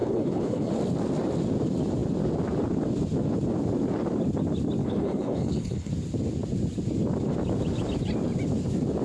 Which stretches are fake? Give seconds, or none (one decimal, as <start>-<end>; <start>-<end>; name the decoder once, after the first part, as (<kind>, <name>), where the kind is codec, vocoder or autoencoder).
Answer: 0.0-0.7 (codec, HILCodec); 4.8-5.9